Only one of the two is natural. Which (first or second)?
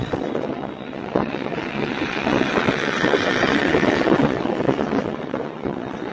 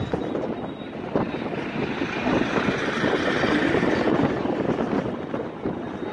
second